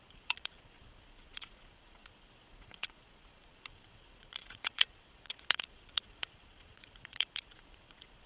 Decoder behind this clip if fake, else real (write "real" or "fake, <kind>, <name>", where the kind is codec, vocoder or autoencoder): fake, vocoder, Vocos